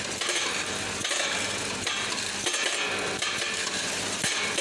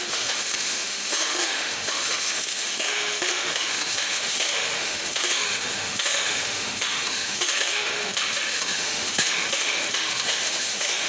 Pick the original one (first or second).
first